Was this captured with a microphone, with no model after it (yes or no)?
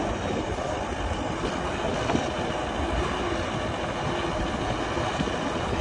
yes